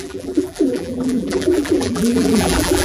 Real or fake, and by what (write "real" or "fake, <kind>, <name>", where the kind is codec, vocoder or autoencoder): fake, vocoder, BigVGAN v2